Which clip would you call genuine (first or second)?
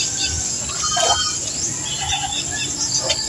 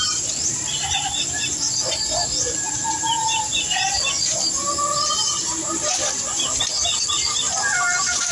first